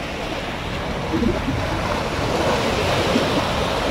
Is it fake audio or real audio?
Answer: real